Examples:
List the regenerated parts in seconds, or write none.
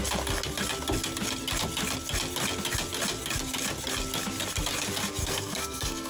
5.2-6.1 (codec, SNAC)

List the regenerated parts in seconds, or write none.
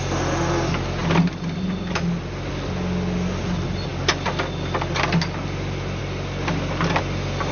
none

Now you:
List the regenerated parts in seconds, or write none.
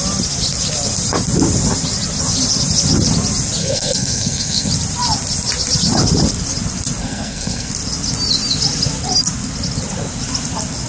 3.6-4.7 (codec, SNAC); 7.0-7.7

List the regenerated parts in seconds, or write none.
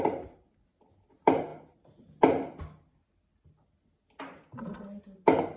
none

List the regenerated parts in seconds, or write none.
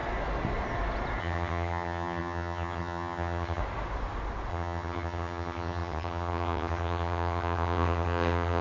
1.2-3.6 (vocoder, HiFi-GAN); 4.5-8.6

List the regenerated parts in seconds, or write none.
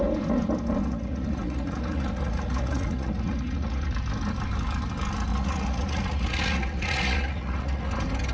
0.8-3.9 (vocoder, Vocos); 5.3-7.9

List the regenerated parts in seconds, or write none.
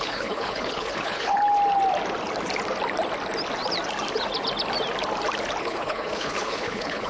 0.0-1.4 (codec, HILCodec); 5.6-7.1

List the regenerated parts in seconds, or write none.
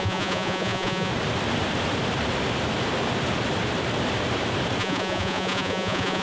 0.0-1.1 (vocoder, Vocos); 4.8-6.2